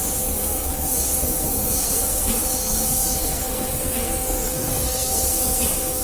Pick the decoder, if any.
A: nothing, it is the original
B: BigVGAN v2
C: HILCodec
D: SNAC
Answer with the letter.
D